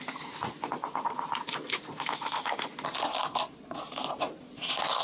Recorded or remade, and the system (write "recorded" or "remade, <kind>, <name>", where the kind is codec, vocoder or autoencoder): recorded